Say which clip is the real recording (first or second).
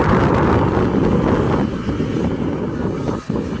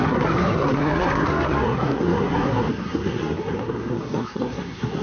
first